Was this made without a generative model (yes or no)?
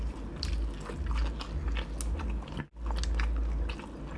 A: yes